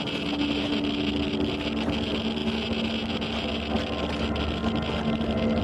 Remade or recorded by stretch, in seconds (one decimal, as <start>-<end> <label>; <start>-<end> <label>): 0.0-5.6 recorded